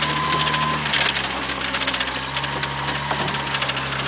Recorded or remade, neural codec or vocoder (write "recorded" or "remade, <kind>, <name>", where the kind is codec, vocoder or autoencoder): recorded